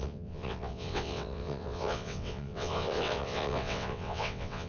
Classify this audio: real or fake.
fake